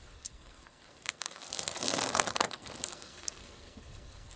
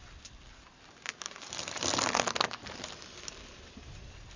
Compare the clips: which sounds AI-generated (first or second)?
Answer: first